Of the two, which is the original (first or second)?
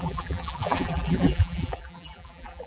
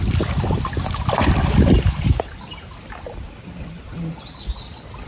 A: second